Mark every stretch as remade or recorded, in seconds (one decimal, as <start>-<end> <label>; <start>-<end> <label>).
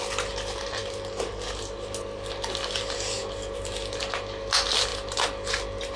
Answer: 0.0-6.0 recorded